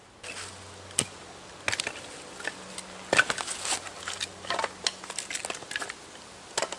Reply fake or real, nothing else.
real